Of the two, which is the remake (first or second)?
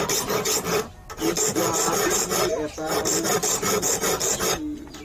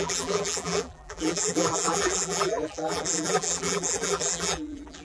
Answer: second